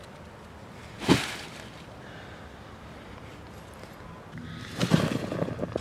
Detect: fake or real real